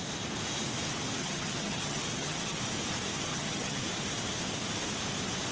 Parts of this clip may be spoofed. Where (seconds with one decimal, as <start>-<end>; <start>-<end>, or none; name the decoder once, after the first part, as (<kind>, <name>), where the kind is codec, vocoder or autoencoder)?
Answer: 1.2-2.6 (vocoder, HiFi-GAN); 3.3-3.8